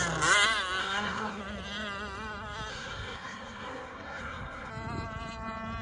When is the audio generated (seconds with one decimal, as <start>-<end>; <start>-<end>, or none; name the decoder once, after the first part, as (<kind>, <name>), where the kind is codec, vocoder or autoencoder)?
0.8-1.4 (codec, SNAC); 2.7-4.7